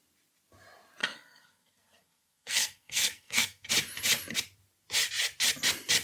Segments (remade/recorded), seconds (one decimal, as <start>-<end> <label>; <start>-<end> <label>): 0.0-1.0 recorded; 1.0-3.7 remade; 3.7-6.0 recorded